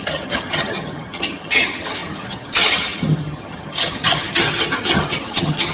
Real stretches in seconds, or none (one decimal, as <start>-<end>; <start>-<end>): none